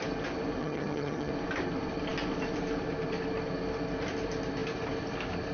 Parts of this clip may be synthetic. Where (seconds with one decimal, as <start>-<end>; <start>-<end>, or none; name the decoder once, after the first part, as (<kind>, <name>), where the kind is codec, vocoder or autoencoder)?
0.6-1.3 (vocoder, HiFi-GAN)